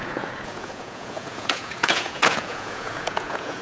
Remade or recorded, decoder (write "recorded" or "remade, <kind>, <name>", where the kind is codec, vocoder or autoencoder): remade, vocoder, Vocos